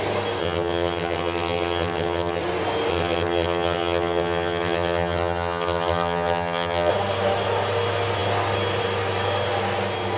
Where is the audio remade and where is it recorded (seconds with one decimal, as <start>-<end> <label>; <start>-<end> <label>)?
0.0-0.4 recorded; 0.4-2.4 remade; 2.4-2.9 recorded; 2.9-6.9 remade; 6.9-10.2 recorded